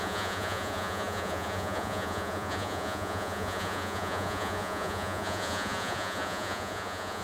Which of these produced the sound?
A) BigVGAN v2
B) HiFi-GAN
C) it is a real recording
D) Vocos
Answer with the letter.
D